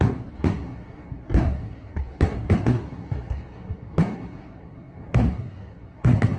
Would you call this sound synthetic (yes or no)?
yes